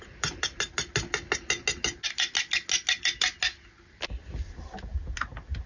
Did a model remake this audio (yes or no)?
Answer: no